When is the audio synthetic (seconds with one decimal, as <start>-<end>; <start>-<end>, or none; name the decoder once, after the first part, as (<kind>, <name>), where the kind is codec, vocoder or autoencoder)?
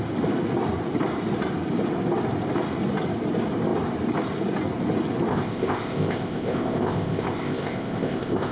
5.3-8.5 (codec, ZipCodec)